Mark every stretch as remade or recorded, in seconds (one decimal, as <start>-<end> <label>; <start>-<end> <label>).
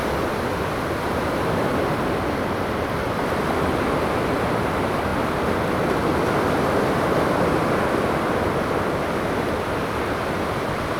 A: 0.0-4.6 recorded; 4.6-11.0 remade